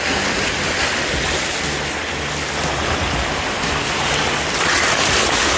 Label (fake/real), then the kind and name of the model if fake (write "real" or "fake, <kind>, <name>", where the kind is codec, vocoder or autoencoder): real